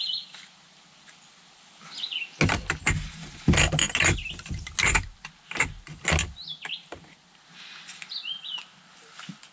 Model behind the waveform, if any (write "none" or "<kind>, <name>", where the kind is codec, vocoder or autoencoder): none